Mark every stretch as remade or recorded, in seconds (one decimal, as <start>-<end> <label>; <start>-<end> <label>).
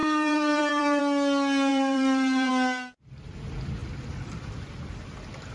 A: 0.0-1.0 remade; 1.0-1.7 recorded; 1.7-2.5 remade; 2.5-3.8 recorded; 3.8-5.5 remade